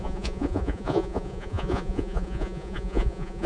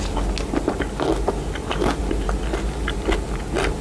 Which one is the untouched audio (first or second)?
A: second